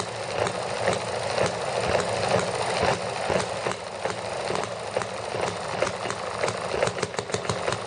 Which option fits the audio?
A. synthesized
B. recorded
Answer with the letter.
B